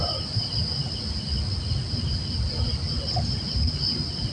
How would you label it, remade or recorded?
recorded